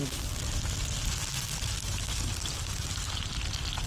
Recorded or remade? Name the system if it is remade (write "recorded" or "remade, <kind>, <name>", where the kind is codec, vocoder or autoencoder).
recorded